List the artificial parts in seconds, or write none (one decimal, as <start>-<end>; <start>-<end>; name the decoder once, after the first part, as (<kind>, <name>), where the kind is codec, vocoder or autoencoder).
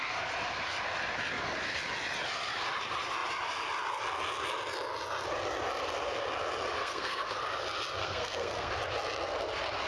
6.8-7.4 (codec, SNAC); 8.0-8.7